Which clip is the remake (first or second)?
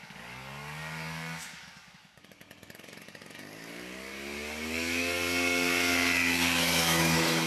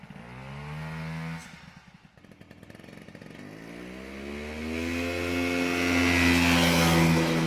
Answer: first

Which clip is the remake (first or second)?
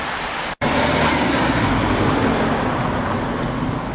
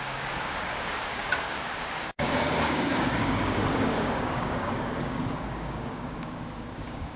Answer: second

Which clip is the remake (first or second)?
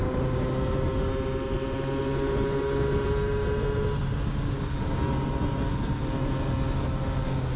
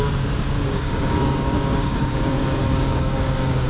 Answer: second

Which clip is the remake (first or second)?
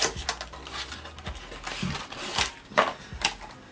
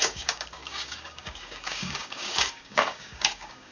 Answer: second